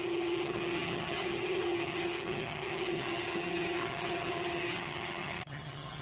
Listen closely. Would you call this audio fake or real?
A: fake